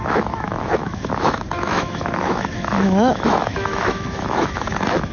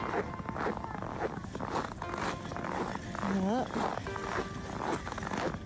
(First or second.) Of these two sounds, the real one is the second